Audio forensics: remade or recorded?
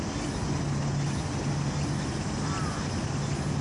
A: recorded